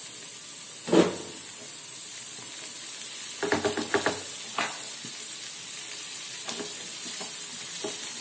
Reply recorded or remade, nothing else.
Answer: recorded